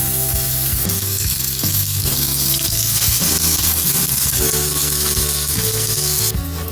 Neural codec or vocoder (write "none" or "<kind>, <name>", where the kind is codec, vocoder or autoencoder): codec, SNAC